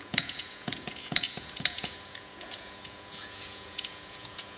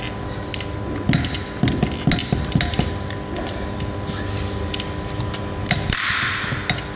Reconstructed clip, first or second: first